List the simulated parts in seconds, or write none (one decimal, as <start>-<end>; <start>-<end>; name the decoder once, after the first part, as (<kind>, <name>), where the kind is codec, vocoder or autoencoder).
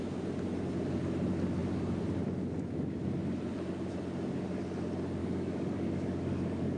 5.2-6.8 (codec, DAC)